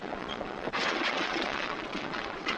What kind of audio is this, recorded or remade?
remade